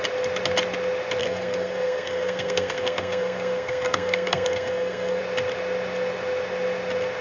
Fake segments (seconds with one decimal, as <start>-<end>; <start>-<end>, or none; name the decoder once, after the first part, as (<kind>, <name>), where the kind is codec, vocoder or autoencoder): 1.2-5.2 (codec, SNAC)